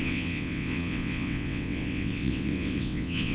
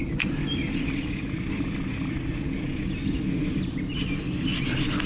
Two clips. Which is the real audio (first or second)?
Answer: second